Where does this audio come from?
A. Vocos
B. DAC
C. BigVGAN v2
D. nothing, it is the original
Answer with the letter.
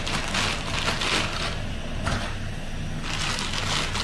D